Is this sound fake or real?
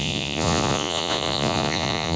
fake